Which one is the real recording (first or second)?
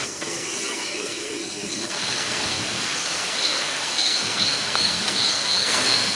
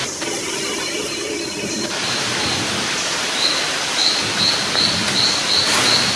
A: second